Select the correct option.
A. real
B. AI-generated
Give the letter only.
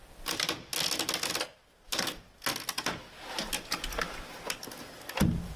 A